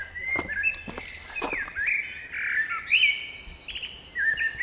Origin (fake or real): real